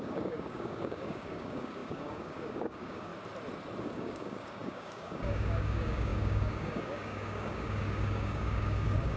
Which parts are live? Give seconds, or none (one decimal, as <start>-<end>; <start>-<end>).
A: 3.1-3.8